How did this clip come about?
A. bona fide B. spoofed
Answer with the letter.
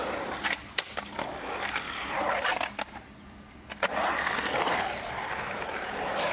A